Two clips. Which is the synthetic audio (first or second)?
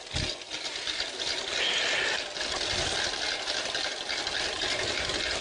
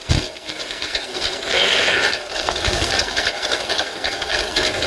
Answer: second